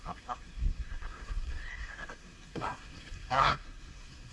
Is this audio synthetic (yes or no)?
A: yes